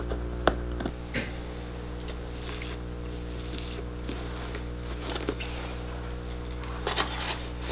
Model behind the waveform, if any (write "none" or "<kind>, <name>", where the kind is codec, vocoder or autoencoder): none